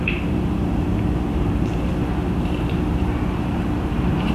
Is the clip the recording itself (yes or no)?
no